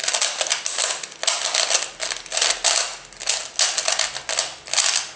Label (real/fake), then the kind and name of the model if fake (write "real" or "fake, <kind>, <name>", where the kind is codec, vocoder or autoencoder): real